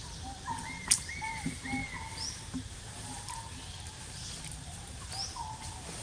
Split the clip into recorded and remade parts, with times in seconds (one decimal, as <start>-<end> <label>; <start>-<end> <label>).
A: 0.0-6.0 recorded